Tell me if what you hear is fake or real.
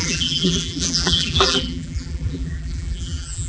fake